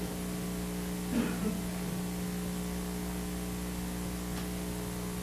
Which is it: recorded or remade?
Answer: recorded